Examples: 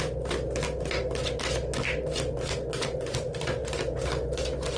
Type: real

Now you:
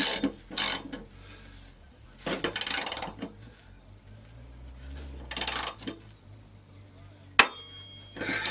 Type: real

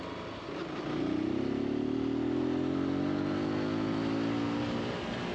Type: real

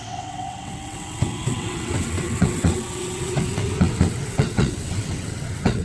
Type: fake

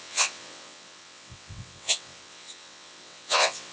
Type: fake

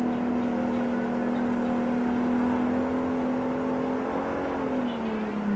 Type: real